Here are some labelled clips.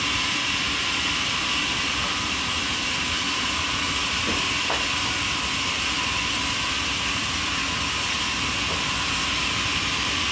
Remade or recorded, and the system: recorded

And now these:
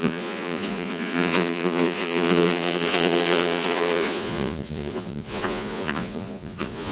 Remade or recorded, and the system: remade, vocoder, Vocos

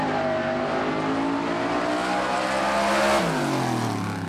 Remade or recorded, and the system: recorded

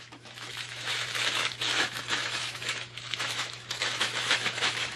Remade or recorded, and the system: remade, autoencoder, DAC-VAE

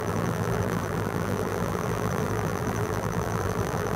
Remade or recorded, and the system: remade, vocoder, BigVGAN v2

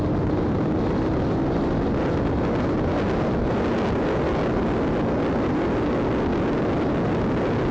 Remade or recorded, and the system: recorded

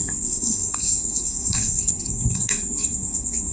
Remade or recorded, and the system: remade, codec, SNAC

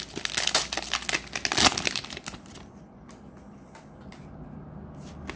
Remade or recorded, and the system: recorded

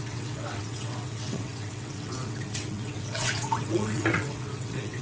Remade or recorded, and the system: remade, vocoder, WaveNeXt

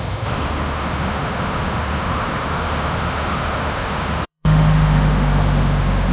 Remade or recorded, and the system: remade, autoencoder, DAC-VAE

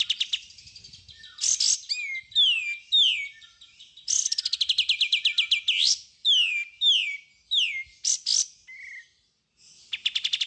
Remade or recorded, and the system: recorded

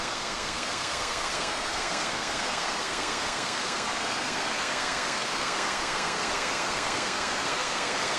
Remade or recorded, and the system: remade, codec, SNAC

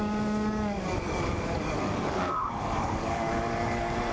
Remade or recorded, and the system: remade, codec, DAC